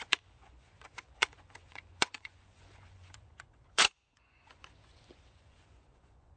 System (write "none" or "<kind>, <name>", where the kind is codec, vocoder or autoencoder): vocoder, Vocos